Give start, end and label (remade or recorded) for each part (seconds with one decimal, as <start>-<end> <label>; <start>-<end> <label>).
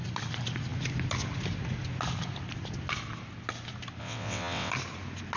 0.0-4.0 recorded; 4.0-4.7 remade; 4.7-5.4 recorded